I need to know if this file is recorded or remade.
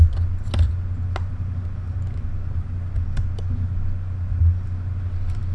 recorded